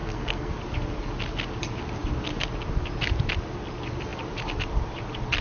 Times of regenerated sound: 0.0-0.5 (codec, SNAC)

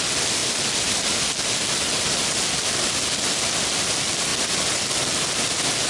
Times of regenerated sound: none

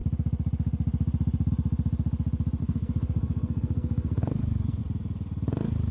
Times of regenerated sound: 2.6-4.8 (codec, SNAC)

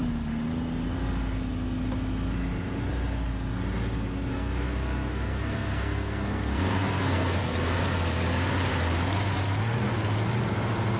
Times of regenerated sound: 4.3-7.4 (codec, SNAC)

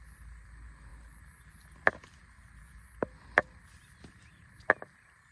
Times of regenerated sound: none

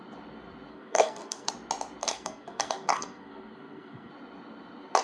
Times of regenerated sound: 0.7-1.5 (codec, SNAC); 2.0-4.1